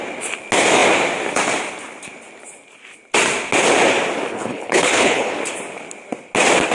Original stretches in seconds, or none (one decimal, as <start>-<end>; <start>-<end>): 0.0-4.3; 5.3-6.7